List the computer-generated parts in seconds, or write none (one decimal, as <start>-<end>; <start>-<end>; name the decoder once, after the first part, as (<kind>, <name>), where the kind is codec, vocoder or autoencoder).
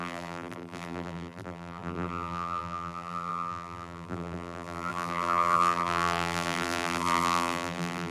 0.0-8.1 (vocoder, BigVGAN v2)